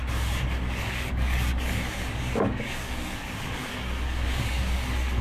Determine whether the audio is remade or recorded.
remade